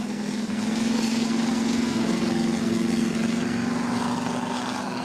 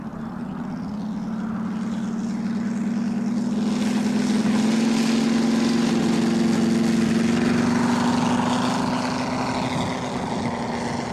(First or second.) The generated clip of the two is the first